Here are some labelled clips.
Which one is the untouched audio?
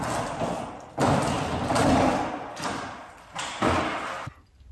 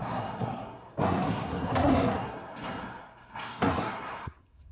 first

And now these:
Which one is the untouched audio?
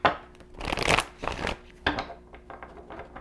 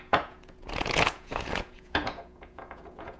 first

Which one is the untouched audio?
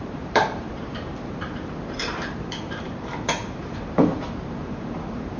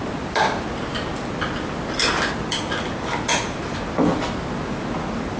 second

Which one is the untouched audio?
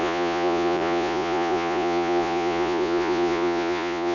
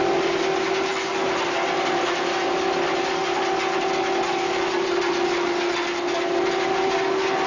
second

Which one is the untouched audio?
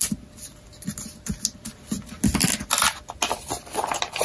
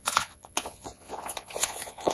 first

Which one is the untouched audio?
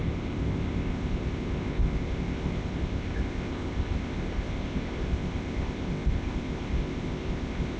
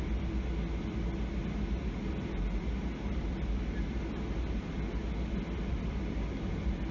second